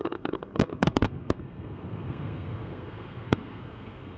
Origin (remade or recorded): remade